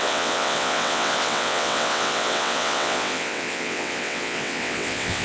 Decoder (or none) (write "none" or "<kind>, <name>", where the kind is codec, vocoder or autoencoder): vocoder, WaveNeXt